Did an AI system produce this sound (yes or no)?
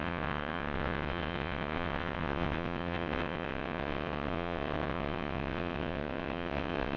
yes